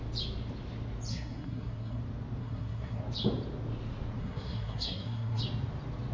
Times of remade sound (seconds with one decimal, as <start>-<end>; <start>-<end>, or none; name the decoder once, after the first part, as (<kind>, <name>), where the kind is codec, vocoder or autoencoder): 1.1-2.0 (codec, SNAC); 2.4-3.0; 4.2-5.4